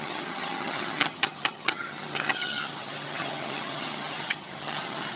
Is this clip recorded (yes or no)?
no